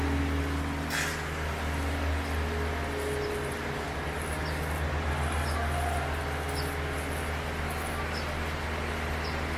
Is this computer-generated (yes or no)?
no